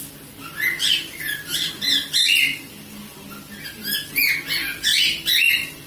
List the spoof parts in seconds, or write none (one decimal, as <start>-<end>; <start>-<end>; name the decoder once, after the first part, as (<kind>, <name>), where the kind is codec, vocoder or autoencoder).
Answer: none